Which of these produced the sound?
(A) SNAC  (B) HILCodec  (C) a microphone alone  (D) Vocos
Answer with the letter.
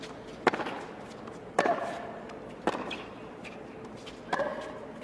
C